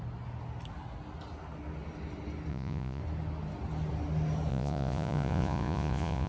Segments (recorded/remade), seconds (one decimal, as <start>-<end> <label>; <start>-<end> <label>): 0.0-2.5 recorded; 2.5-3.0 remade; 3.0-4.5 recorded; 4.5-6.3 remade